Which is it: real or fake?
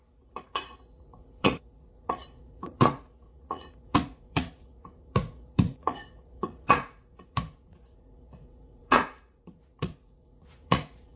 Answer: fake